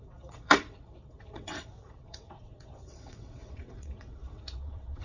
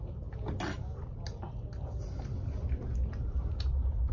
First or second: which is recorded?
second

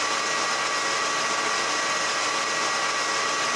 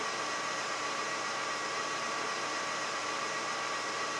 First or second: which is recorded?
first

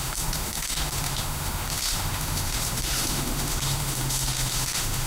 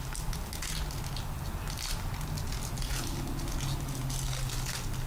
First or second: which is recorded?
second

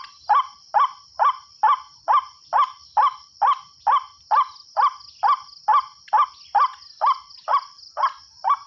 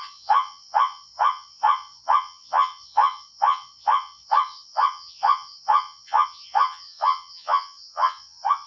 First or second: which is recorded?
first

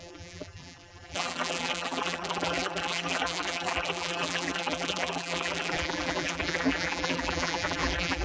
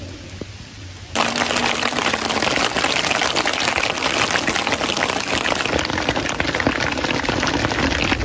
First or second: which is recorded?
second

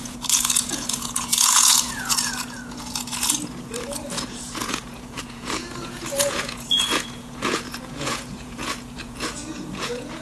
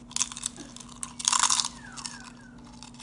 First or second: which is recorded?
second